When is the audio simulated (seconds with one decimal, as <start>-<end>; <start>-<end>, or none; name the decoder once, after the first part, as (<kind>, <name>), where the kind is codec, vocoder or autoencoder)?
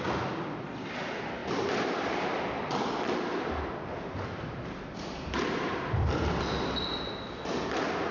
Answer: 1.4-3.7 (vocoder, BigVGAN v2)